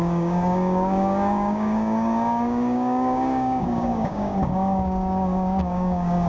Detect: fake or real fake